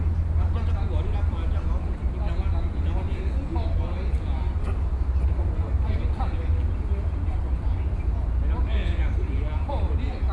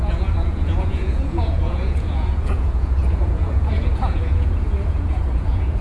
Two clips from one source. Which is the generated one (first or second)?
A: second